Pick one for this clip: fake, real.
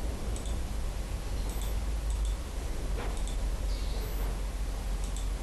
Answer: real